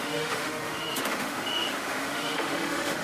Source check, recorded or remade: remade